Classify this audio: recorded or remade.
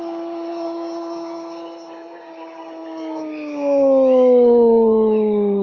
recorded